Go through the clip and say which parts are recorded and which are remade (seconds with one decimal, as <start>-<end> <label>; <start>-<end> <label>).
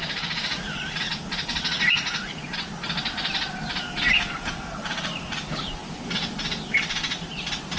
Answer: 0.0-7.8 recorded